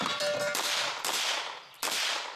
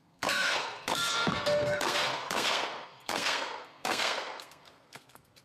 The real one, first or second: first